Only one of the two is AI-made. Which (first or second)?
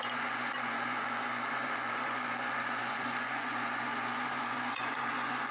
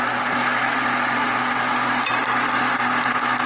first